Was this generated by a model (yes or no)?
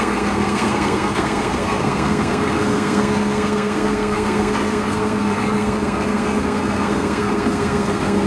yes